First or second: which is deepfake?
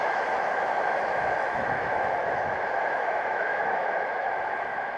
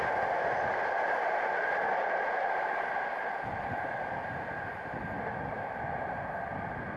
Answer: first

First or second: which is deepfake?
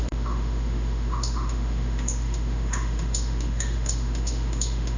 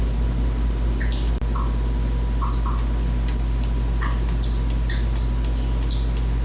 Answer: first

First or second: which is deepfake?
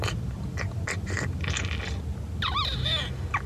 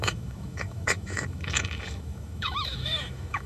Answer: second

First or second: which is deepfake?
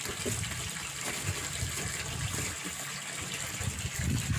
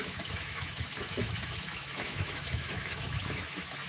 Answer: second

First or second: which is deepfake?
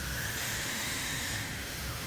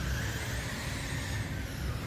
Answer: first